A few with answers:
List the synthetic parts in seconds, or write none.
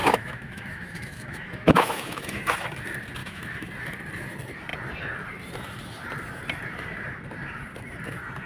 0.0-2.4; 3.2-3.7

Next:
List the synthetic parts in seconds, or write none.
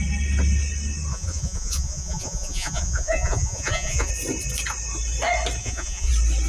1.1-4.1; 5.6-6.1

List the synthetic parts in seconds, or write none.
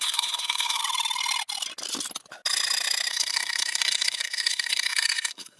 0.0-0.8; 3.1-5.6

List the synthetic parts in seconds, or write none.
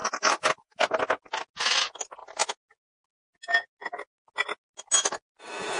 0.0-1.0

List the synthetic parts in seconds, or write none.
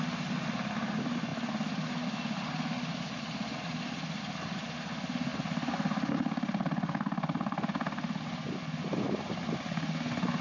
none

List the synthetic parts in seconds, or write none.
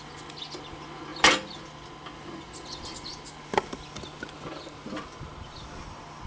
none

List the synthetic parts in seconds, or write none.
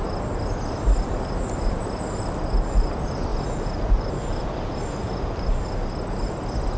none